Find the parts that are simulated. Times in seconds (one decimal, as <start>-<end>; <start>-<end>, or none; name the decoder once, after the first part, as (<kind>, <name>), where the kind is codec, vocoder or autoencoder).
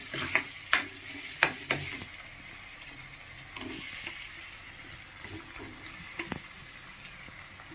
none